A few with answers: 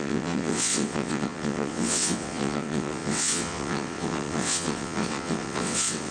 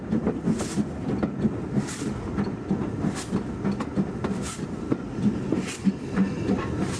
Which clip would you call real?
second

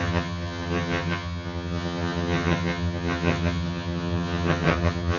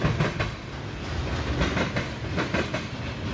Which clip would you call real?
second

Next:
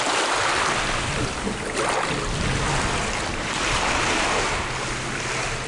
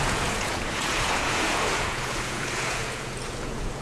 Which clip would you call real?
first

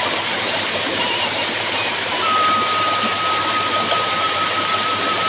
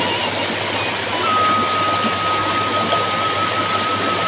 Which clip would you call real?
second